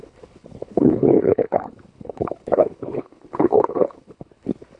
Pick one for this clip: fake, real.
fake